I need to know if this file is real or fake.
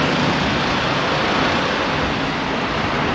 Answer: real